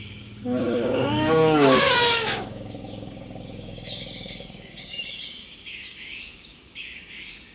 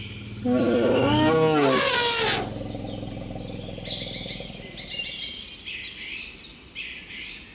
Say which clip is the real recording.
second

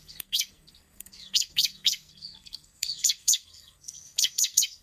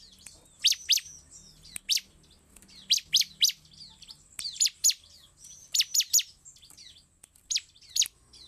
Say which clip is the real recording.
second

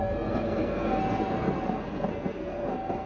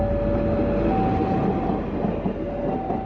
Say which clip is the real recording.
second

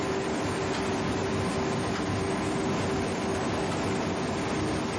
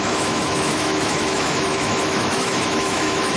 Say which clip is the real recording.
first